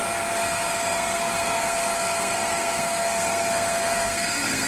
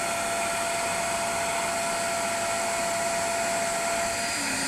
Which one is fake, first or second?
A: first